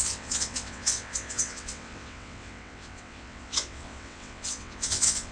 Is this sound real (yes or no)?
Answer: no